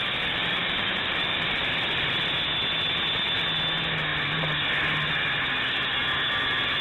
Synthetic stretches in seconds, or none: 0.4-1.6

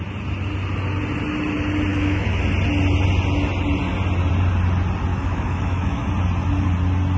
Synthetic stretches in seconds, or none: 1.9-2.4; 5.1-6.1